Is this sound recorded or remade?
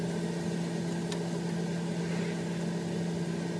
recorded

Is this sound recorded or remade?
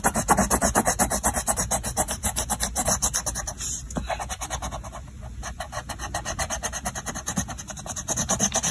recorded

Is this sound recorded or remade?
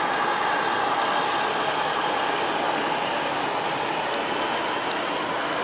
recorded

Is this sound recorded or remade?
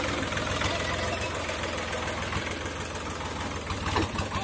recorded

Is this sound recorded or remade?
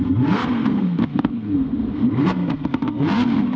remade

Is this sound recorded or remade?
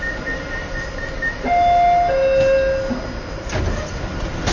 recorded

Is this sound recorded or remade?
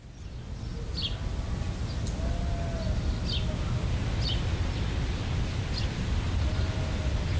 recorded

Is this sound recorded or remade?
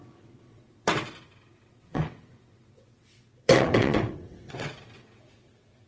remade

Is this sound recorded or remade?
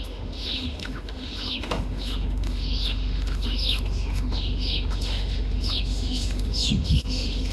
remade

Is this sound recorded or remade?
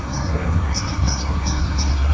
remade